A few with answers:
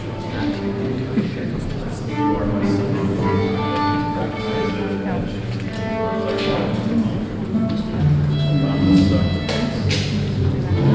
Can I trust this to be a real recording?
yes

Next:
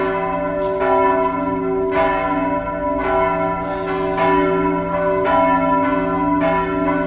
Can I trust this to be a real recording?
yes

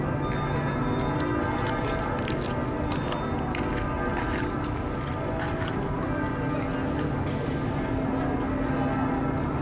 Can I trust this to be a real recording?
yes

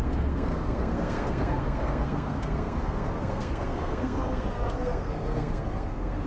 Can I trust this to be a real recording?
no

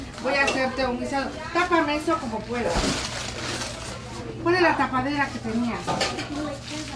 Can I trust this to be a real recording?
yes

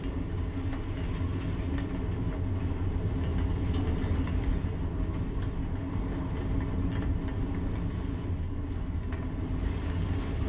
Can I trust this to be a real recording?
yes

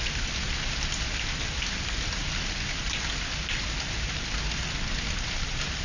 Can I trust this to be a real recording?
yes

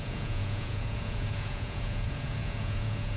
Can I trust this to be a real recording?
no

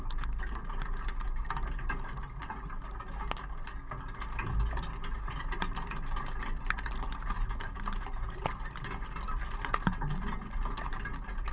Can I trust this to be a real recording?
yes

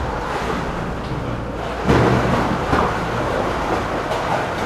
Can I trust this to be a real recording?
yes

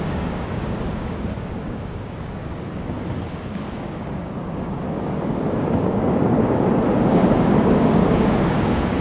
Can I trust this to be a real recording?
no